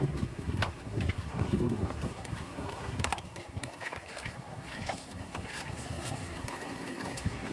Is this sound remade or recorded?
remade